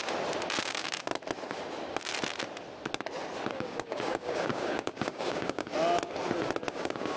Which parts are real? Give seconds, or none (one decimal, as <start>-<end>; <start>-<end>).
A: 0.0-0.6; 1.1-3.5; 5.7-6.7